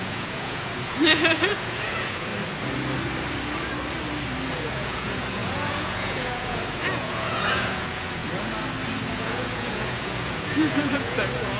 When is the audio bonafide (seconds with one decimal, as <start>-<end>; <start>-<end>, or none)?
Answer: 2.3-4.5; 8.2-9.1